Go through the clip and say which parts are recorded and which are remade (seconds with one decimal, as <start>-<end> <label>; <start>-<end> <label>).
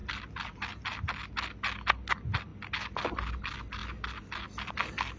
0.0-5.2 recorded